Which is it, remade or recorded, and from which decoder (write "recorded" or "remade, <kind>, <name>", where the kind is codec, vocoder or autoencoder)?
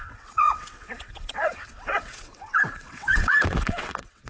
remade, vocoder, WaveNeXt